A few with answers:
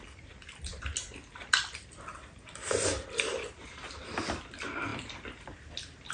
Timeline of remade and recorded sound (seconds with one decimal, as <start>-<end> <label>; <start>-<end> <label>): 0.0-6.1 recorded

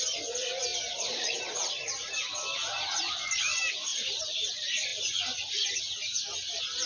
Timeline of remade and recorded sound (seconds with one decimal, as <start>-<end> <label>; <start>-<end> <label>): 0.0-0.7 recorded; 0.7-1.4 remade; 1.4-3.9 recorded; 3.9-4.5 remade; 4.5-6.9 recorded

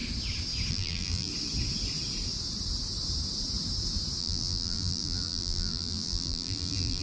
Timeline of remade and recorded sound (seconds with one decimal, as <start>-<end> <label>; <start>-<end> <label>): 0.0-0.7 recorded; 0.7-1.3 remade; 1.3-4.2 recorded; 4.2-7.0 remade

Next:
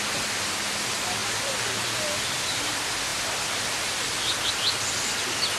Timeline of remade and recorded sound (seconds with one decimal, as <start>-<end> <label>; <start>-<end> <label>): 0.0-1.2 recorded; 1.2-2.6 remade; 2.6-5.6 recorded

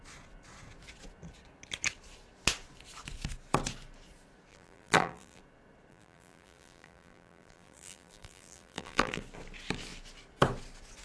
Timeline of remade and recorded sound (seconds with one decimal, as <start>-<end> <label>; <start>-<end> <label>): 0.0-4.5 recorded; 4.5-5.4 remade; 5.4-5.9 recorded; 5.9-9.2 remade; 9.2-11.0 recorded

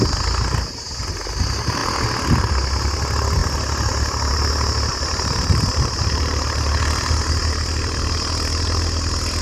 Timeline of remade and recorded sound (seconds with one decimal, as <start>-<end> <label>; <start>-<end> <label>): 0.0-4.9 recorded; 4.9-7.2 remade; 7.2-9.4 recorded

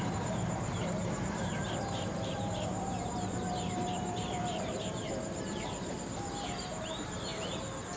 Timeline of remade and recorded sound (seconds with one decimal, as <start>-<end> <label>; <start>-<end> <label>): 0.0-7.3 remade; 7.3-8.0 recorded

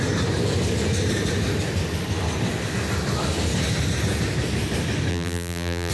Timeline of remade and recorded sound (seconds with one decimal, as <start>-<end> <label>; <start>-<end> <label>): 0.0-5.1 recorded; 5.1-5.9 remade